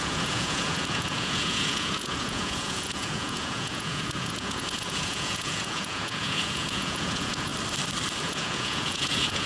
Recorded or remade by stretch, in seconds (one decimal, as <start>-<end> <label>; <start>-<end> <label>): 0.0-7.5 remade; 7.5-8.2 recorded; 8.2-9.5 remade